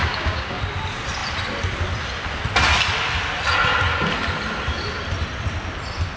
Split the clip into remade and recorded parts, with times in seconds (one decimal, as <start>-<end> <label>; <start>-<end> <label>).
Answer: 0.0-0.6 remade; 0.6-6.2 recorded